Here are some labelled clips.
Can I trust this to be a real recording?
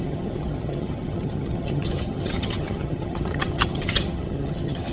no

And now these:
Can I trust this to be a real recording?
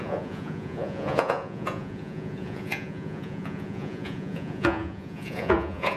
no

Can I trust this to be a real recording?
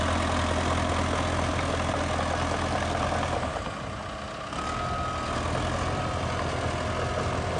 yes